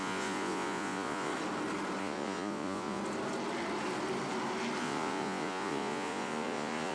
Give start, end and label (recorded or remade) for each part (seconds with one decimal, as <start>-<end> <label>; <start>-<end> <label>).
0.0-1.3 remade; 1.3-2.0 recorded; 2.0-3.0 remade; 3.0-4.8 recorded; 4.8-6.9 remade